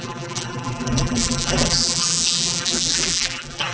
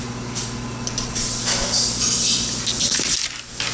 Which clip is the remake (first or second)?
first